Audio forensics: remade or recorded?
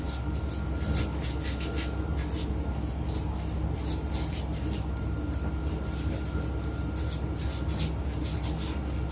remade